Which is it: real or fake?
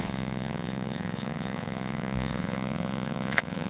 fake